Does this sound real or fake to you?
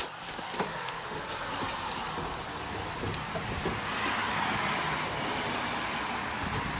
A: real